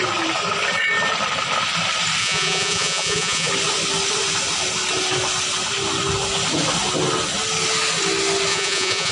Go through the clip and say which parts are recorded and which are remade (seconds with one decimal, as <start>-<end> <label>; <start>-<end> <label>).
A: 0.0-2.2 recorded; 2.2-3.5 remade; 3.5-8.5 recorded; 8.5-9.1 remade